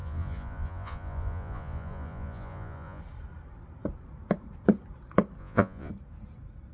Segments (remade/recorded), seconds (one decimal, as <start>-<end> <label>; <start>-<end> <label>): 0.0-3.0 remade; 3.0-5.4 recorded; 5.4-5.9 remade; 5.9-6.7 recorded